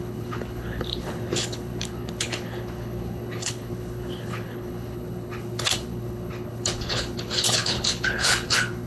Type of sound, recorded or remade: remade